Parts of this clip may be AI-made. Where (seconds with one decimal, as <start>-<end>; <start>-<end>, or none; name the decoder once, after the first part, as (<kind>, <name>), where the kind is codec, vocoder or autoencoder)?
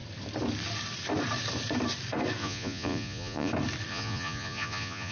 2.4-3.5 (vocoder, Vocos); 3.9-5.1